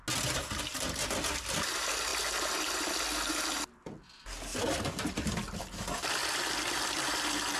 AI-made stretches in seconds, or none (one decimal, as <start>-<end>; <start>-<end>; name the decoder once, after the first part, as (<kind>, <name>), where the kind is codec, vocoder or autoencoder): none